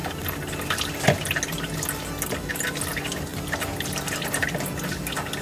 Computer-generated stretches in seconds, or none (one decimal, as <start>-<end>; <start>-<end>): none